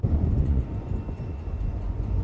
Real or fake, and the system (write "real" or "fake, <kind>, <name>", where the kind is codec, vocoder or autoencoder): fake, vocoder, Vocos